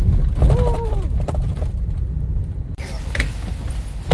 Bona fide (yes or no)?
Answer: no